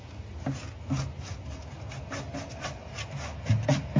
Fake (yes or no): no